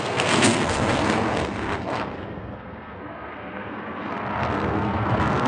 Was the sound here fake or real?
fake